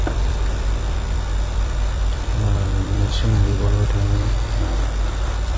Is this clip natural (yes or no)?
no